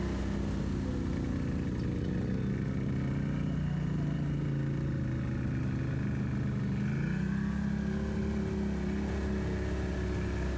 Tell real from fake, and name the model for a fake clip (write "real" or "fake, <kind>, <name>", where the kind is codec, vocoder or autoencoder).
real